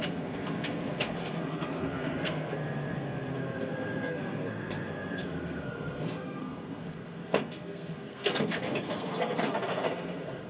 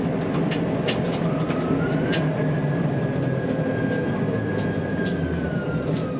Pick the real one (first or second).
second